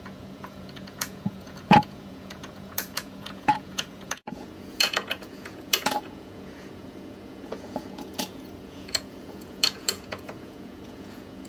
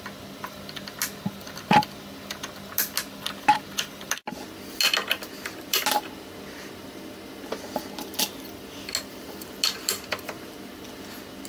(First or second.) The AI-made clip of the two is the first